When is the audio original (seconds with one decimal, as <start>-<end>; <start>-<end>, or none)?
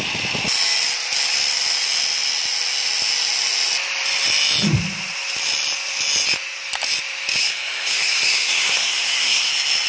0.0-7.4; 9.5-9.9